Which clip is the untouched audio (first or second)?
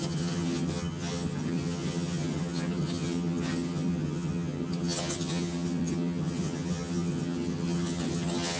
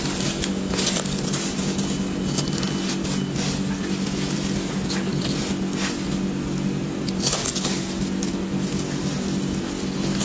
second